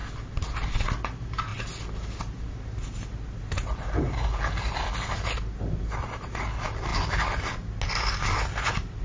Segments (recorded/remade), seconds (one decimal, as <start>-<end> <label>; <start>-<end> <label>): 0.0-9.0 recorded